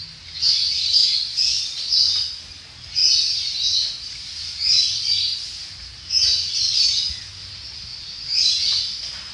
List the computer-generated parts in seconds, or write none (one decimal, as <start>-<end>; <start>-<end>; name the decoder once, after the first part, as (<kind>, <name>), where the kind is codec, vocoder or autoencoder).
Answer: 1.0-2.4 (vocoder, BigVGAN v2); 6.2-6.8; 7.9-8.8